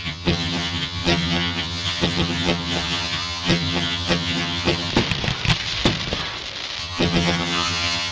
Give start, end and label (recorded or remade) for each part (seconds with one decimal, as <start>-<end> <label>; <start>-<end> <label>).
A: 0.0-4.9 remade; 4.9-6.8 recorded; 6.8-8.1 remade

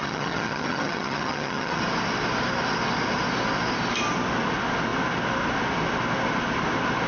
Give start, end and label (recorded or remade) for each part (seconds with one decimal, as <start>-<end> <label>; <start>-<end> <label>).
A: 0.0-1.8 remade; 1.8-7.1 recorded